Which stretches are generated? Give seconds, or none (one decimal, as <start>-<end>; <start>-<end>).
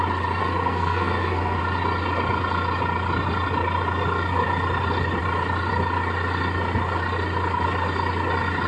0.4-1.6